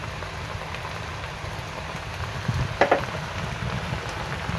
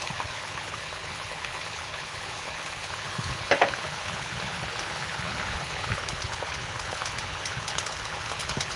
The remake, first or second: second